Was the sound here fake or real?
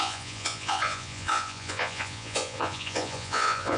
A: fake